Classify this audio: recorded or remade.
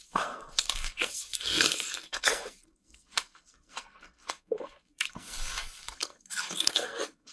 remade